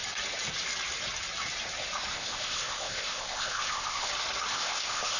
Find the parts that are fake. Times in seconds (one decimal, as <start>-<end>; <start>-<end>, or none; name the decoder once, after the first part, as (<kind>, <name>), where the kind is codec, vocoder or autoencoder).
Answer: 2.1-4.1 (codec, ZipCodec); 4.5-5.2